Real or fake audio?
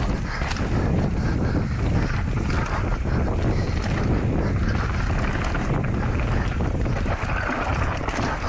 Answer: real